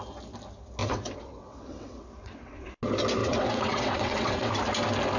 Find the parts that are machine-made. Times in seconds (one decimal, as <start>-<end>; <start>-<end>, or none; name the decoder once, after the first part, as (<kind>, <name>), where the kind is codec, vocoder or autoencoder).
0.8-2.7 (vocoder, WaveNeXt); 3.2-4.5